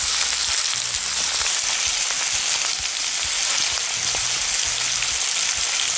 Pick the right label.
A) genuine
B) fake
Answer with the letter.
A